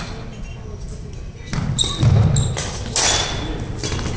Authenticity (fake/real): real